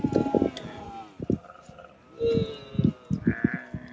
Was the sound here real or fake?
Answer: real